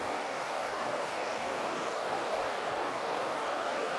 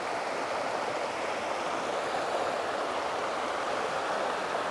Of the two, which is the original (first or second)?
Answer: second